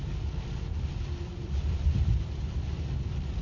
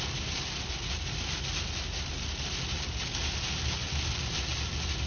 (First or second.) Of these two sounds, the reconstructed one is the first